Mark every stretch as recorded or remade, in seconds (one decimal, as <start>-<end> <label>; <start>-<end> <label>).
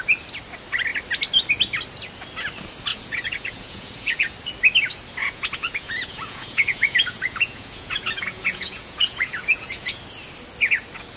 0.0-2.9 recorded; 2.9-4.3 remade; 4.3-5.2 recorded; 5.2-10.0 remade; 10.0-11.2 recorded